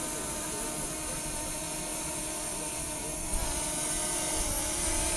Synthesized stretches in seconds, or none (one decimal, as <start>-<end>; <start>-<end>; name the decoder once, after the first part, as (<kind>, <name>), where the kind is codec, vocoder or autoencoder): none